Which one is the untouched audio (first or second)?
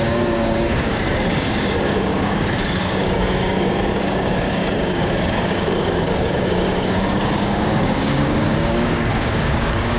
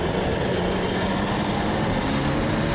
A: second